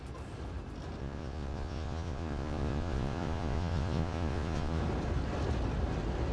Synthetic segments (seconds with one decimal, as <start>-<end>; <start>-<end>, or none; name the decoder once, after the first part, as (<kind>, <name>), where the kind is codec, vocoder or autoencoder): 1.0-4.8 (vocoder, Vocos)